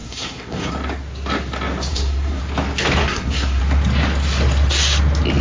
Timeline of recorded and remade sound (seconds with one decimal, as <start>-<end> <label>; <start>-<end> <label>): 0.0-0.7 remade; 0.7-1.9 recorded; 1.9-2.4 remade; 2.4-3.0 recorded; 3.0-3.6 remade; 3.6-5.4 recorded